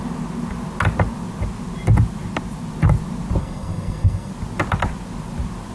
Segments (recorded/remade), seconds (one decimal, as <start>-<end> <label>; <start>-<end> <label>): 0.0-3.4 recorded; 3.4-4.3 remade; 4.3-5.7 recorded